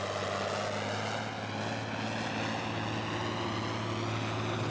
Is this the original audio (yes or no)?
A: yes